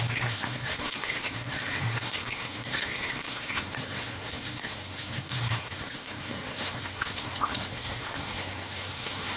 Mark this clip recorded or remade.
remade